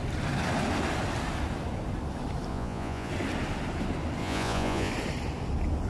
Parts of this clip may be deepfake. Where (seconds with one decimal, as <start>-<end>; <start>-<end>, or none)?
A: 2.5-3.1; 4.2-4.9